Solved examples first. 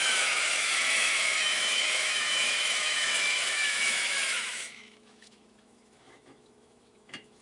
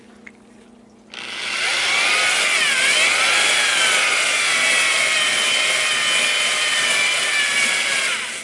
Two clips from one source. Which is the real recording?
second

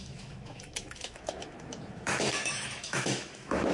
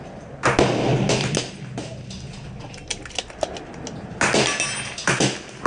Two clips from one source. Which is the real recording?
second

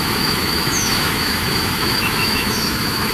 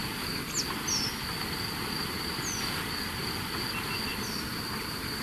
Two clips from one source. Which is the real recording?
second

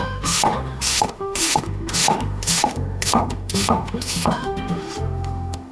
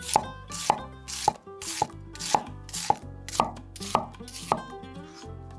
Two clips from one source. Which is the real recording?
second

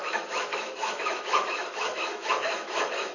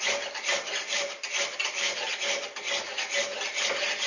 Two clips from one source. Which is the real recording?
second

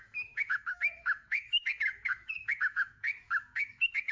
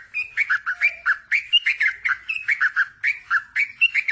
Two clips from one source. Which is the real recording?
second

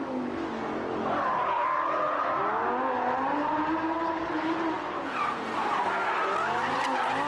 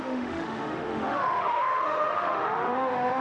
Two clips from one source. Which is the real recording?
first